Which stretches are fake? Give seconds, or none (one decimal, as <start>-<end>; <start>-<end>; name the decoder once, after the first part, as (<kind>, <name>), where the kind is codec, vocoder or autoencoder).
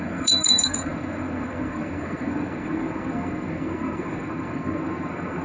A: 0.0-5.4 (codec, SNAC)